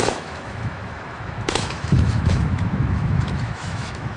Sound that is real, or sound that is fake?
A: fake